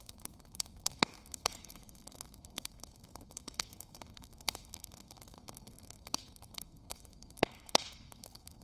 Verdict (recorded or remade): remade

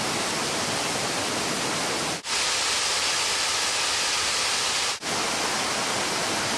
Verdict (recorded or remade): recorded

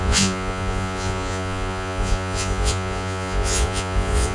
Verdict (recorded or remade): remade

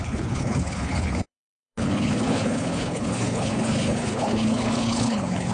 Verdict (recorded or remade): remade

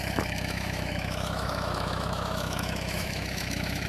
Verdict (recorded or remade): remade